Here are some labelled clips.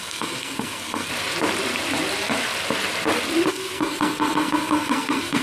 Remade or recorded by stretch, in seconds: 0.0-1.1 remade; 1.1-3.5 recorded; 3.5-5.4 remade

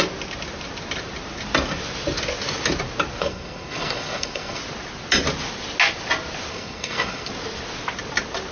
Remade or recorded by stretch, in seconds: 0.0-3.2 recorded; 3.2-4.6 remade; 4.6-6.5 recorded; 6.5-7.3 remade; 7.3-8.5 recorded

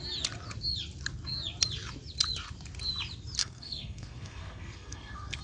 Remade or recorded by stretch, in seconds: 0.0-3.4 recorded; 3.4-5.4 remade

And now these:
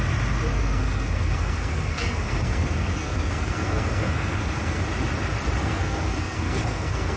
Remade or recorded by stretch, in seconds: 0.0-0.5 recorded; 0.5-4.8 remade; 4.8-5.6 recorded; 5.6-7.2 remade